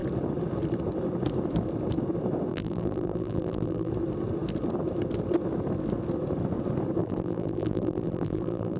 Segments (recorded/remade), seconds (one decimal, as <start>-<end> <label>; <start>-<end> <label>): 0.0-2.5 recorded; 2.5-3.9 remade; 3.9-7.0 recorded; 7.0-8.8 remade